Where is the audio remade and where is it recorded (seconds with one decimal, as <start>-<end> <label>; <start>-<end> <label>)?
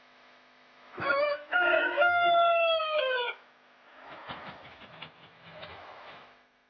0.0-2.8 remade; 2.8-5.3 recorded; 5.3-6.7 remade